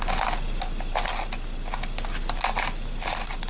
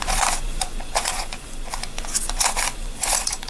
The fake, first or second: second